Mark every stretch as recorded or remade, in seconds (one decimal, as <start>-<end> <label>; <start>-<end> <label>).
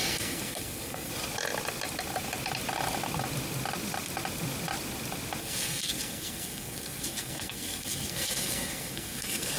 0.0-1.1 remade; 1.1-5.4 recorded; 5.4-9.6 remade